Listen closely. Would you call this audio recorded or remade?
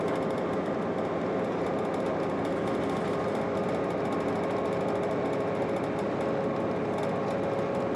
recorded